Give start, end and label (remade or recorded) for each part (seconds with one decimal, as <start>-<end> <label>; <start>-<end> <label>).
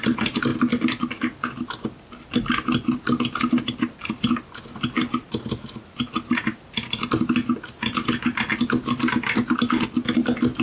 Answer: 0.0-10.6 recorded